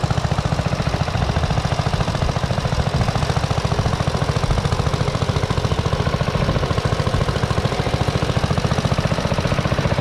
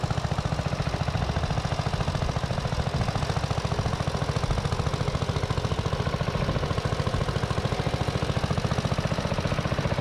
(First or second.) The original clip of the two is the second